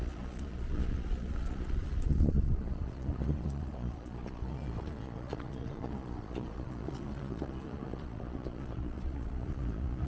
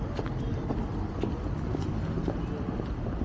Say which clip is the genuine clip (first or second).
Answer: second